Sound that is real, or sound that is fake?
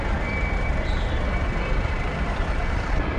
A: fake